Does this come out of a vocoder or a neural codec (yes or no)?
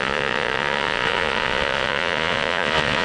yes